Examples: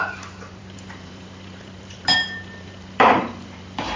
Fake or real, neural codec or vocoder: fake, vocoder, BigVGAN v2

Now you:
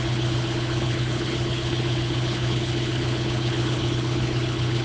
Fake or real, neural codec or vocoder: fake, codec, HILCodec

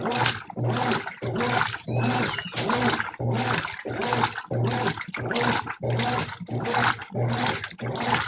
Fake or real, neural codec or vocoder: real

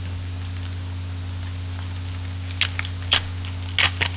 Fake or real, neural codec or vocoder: real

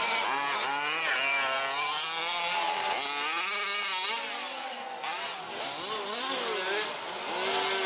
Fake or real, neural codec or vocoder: real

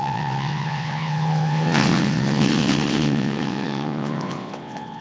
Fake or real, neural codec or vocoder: fake, vocoder, WaveNeXt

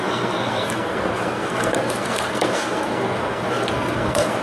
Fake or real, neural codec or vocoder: fake, codec, SNAC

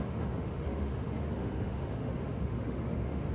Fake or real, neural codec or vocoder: fake, autoencoder, DAC-VAE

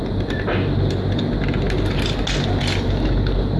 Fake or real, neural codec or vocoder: real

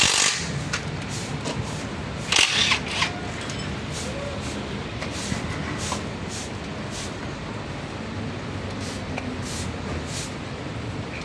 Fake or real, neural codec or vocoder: real